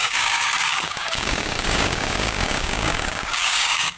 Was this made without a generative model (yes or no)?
no